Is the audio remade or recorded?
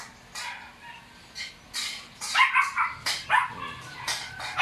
recorded